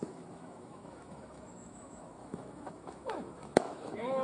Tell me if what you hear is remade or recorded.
remade